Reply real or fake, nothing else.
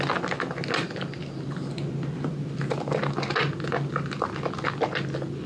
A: real